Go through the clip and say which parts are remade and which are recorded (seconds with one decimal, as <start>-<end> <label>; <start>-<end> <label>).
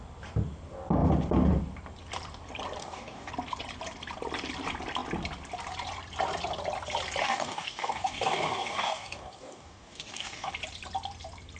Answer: 0.0-2.8 recorded; 2.8-3.3 remade; 3.3-7.2 recorded; 7.2-10.5 remade; 10.5-11.6 recorded